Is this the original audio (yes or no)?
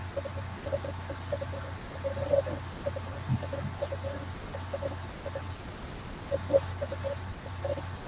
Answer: yes